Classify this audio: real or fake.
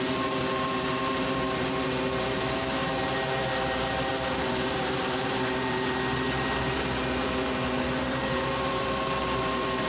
fake